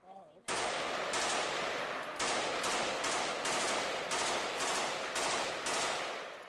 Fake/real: real